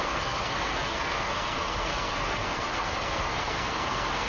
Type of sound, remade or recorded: remade